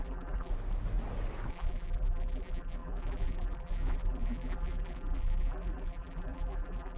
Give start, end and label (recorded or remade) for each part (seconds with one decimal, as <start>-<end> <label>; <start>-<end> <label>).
0.0-0.5 remade; 0.5-1.5 recorded; 1.5-7.0 remade